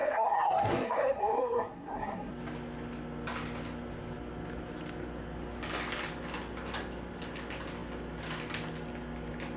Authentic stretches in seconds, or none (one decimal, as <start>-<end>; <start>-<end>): 2.3-9.6